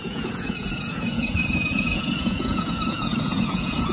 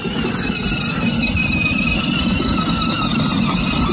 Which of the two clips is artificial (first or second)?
first